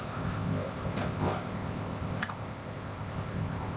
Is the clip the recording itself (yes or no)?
no